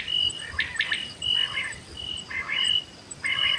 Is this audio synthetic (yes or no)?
yes